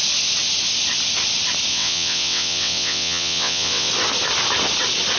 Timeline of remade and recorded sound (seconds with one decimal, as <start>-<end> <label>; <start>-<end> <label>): 0.0-1.7 recorded; 1.7-3.9 remade; 3.9-5.2 recorded

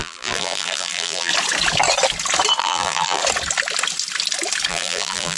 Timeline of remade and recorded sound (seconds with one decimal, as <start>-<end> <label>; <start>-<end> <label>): 0.0-1.3 remade; 1.3-2.6 recorded; 2.6-3.2 remade; 3.2-4.7 recorded; 4.7-5.4 remade

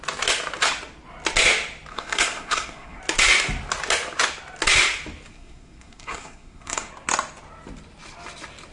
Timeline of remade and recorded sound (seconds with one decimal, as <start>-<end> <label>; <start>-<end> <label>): 0.0-1.9 recorded; 1.9-3.0 remade; 3.0-5.3 recorded; 5.3-6.9 remade; 6.9-8.7 recorded